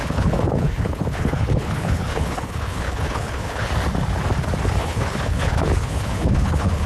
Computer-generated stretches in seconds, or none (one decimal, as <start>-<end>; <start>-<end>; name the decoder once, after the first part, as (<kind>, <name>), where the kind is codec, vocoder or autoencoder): 0.0-3.7 (codec, HILCodec); 4.8-6.9